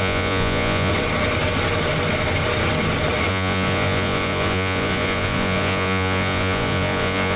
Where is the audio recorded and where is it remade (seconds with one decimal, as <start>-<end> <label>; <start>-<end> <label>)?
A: 0.0-0.9 remade; 0.9-3.3 recorded; 3.3-7.4 remade